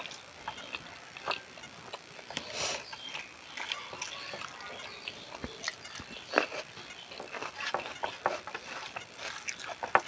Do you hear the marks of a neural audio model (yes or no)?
no